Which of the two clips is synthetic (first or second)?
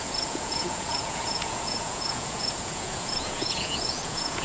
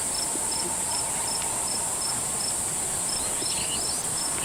first